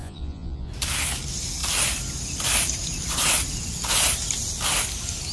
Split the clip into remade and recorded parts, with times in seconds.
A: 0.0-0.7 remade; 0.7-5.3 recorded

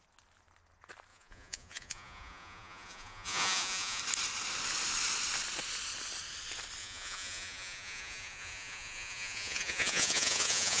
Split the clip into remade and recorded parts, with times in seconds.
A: 0.0-1.1 recorded; 1.1-4.0 remade; 4.0-6.8 recorded; 6.8-10.8 remade

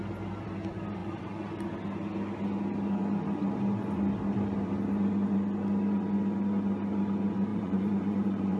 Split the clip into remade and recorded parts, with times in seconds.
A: 0.0-1.0 recorded; 1.0-1.5 remade; 1.5-7.5 recorded; 7.5-8.6 remade

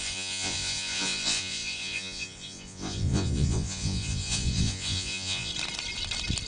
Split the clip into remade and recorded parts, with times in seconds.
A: 0.0-5.5 remade; 5.5-6.5 recorded

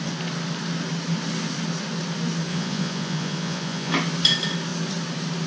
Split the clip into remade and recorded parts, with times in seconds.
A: 0.0-2.5 recorded; 2.5-3.9 remade; 3.9-5.5 recorded

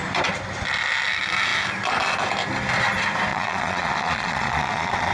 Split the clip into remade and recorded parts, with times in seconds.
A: 0.0-3.3 recorded; 3.3-5.1 remade